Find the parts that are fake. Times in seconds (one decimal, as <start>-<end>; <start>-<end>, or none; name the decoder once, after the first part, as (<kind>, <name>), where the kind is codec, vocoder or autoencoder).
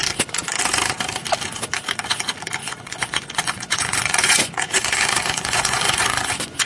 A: 2.6-6.7 (vocoder, Vocos)